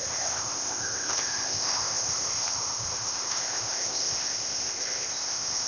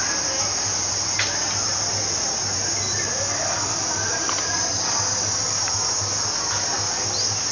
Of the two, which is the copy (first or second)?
first